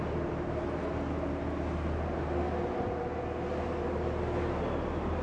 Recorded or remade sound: recorded